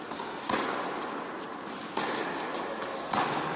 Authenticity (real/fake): real